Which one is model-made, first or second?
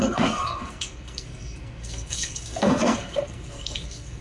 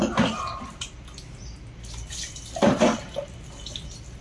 first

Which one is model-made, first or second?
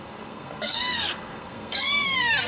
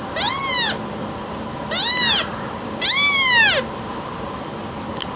first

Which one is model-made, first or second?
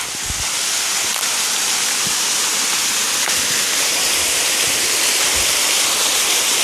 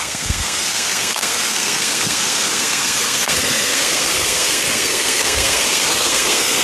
second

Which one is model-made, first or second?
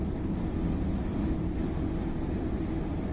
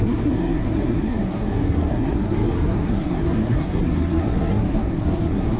second